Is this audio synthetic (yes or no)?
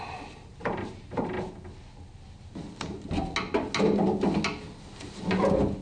no